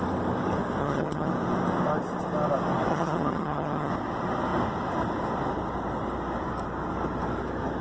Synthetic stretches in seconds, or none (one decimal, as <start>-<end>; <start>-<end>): 0.8-1.3; 2.9-3.9